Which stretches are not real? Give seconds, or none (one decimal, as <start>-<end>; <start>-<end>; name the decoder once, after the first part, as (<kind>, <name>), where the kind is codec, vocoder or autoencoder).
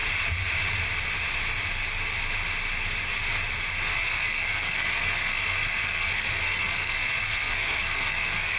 3.9-8.6 (codec, SNAC)